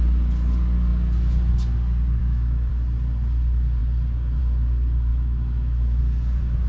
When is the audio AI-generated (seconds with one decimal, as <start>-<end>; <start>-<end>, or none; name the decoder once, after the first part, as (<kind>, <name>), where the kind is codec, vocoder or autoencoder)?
2.2-2.7 (autoencoder, DAC-VAE); 5.1-6.0